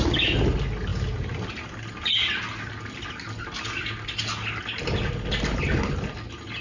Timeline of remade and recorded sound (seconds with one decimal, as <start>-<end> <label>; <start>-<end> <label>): 0.0-6.6 recorded